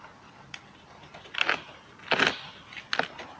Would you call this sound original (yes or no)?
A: yes